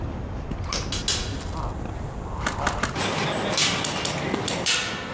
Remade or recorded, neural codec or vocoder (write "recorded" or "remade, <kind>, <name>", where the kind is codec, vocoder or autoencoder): recorded